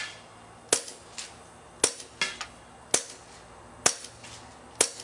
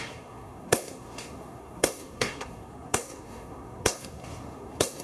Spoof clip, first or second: second